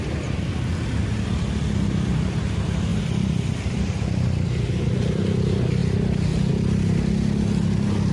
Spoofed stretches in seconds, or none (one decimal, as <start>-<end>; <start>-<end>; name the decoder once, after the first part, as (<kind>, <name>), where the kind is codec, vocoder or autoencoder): 2.9-4.8 (vocoder, BigVGAN v2)